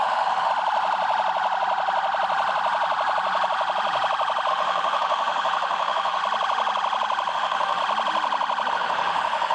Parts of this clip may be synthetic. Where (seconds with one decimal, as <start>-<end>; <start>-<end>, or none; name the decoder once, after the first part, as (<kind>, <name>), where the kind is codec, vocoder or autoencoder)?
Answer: 0.0-0.5 (autoencoder, DAC-VAE); 4.5-6.2; 7.3-7.8; 8.7-9.5